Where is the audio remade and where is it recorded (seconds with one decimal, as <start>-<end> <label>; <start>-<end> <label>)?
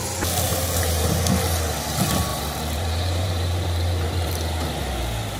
0.0-0.5 recorded; 0.5-1.1 remade; 1.1-2.3 recorded; 2.3-4.3 remade; 4.3-5.4 recorded